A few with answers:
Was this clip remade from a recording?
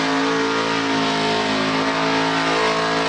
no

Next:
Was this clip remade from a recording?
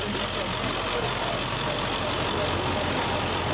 no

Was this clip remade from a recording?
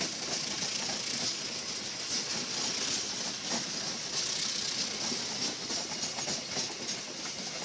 no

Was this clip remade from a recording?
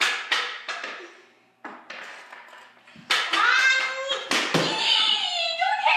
no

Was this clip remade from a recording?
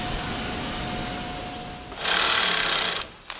no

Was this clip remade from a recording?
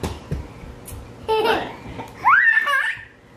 no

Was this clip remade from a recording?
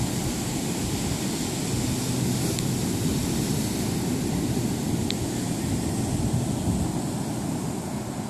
no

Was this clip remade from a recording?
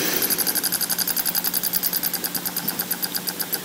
yes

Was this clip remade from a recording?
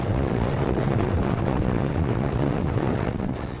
yes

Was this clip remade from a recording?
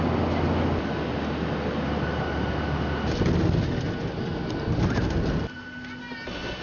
no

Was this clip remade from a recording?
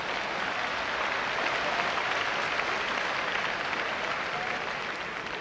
no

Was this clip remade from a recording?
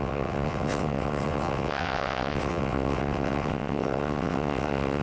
yes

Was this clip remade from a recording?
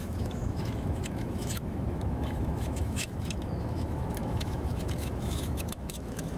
yes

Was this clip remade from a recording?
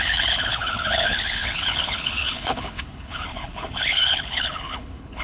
yes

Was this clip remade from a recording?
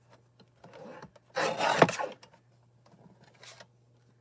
no